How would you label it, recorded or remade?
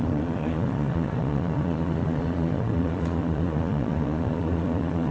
remade